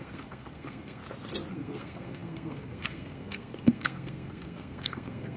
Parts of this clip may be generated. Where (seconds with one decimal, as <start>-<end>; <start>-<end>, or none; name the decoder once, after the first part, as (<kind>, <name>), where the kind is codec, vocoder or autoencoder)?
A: 0.0-1.0 (codec, SNAC); 1.5-5.4